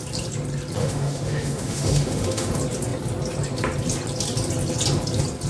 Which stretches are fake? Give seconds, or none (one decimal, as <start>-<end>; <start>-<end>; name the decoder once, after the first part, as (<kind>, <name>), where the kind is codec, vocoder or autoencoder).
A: 0.8-2.5 (autoencoder, DAC-VAE)